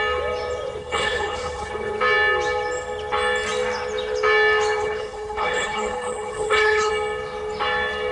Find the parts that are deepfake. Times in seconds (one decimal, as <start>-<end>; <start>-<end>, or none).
0.8-1.7; 4.8-6.9